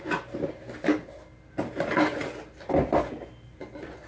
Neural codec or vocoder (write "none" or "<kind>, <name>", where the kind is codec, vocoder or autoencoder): none